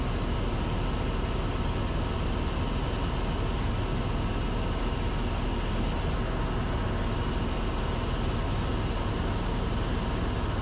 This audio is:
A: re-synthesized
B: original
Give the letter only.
B